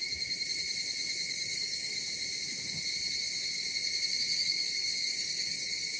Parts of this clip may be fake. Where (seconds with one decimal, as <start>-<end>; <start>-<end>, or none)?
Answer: 1.3-1.9; 4.4-6.0